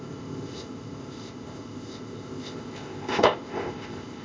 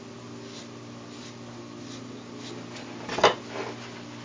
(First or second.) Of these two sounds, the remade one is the first